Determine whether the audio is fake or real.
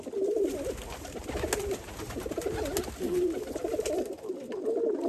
real